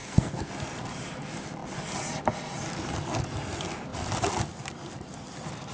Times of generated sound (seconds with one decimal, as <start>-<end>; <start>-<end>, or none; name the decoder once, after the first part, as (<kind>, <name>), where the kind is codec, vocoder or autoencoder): 0.0-0.5 (codec, SNAC)